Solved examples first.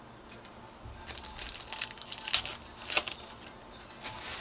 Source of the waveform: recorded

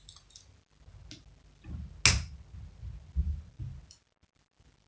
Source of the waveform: recorded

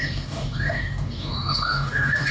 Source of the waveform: remade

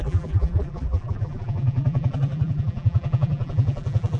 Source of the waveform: remade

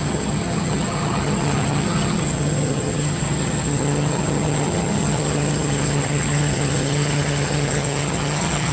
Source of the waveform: remade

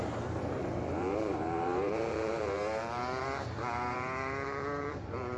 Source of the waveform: remade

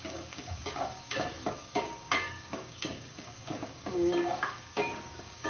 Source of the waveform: remade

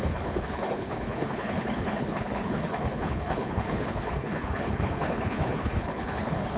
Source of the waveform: remade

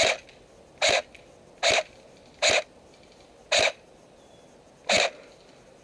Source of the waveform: recorded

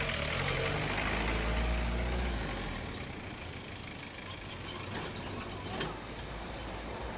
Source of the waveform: recorded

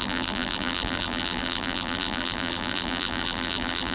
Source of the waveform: remade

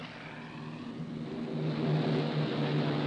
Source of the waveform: recorded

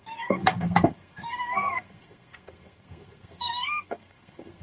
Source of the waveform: remade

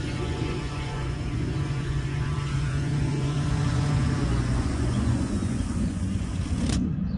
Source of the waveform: remade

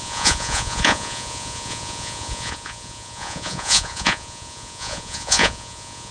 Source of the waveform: remade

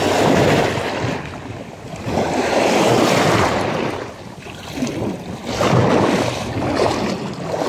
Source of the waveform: recorded